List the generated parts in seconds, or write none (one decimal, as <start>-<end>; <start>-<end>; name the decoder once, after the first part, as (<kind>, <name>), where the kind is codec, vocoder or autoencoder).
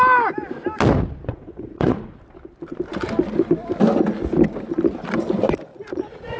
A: 1.3-2.2 (vocoder, Vocos); 5.7-6.4